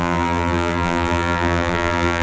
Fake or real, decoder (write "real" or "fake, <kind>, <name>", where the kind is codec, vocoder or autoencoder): fake, vocoder, BigVGAN v2